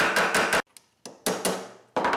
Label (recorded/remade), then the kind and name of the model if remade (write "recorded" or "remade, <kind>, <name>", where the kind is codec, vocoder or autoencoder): recorded